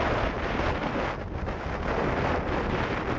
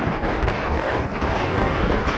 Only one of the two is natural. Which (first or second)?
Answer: first